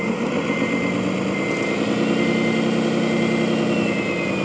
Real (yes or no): yes